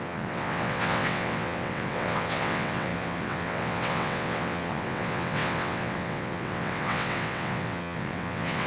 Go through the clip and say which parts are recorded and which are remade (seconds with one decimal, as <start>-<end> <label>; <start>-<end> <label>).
0.0-8.7 remade